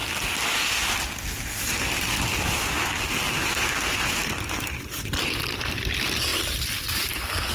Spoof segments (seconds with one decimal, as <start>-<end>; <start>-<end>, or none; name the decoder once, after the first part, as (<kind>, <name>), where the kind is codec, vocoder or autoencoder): none